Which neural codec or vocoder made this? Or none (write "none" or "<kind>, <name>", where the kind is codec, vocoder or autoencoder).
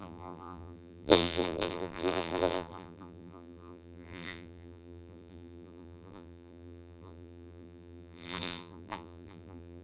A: vocoder, BigVGAN v2